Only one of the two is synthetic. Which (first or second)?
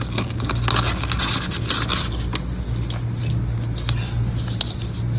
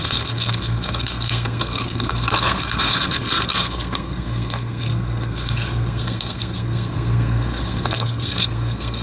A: second